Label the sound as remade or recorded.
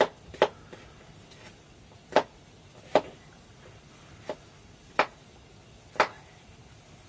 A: recorded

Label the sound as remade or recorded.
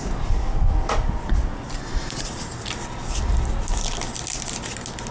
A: recorded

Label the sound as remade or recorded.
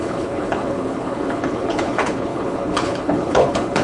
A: remade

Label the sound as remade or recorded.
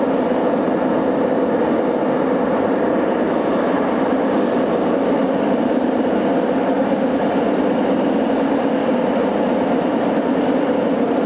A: recorded